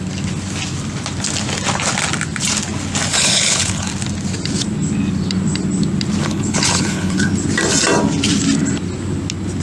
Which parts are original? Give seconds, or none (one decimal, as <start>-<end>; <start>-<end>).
0.0-3.1; 3.9-6.2; 7.3-9.6